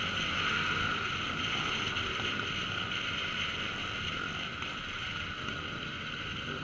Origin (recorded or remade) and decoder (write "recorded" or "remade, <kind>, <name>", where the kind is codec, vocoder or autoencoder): recorded